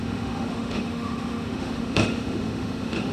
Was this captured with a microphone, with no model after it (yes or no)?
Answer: no